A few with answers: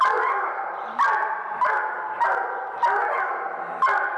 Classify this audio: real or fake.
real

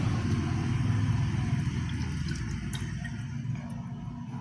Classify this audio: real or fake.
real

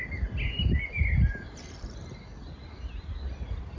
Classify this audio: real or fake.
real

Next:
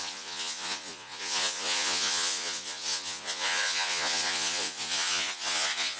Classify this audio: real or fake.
fake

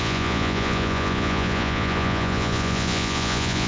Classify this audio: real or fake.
fake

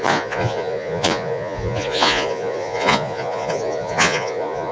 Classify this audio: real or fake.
fake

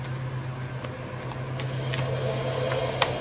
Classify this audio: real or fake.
real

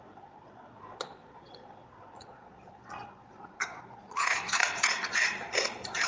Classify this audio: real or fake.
fake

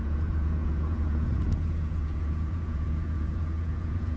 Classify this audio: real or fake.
fake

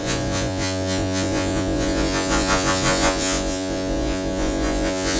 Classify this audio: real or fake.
fake